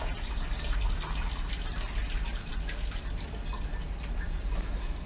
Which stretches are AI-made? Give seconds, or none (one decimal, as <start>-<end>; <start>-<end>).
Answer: none

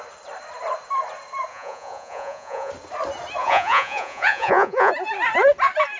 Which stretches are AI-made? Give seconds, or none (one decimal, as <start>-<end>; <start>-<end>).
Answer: 1.5-2.7; 3.4-4.9

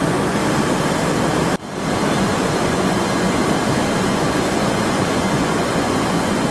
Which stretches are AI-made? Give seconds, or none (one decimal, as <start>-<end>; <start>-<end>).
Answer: 0.0-0.4; 2.2-3.4; 4.0-6.5

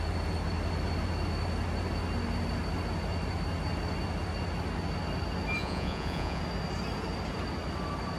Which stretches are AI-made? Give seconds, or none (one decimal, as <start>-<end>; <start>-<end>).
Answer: 5.6-6.4